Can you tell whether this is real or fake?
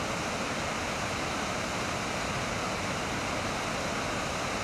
real